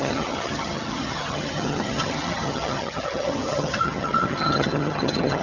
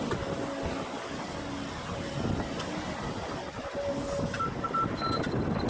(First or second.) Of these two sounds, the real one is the second